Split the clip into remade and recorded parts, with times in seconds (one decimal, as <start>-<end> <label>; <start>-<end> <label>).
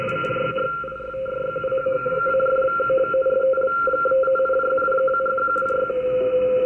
0.0-1.8 recorded; 1.8-2.3 remade; 2.3-6.7 recorded